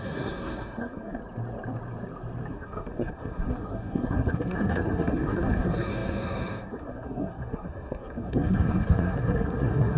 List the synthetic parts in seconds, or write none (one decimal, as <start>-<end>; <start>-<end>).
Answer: 0.0-1.2; 2.5-10.0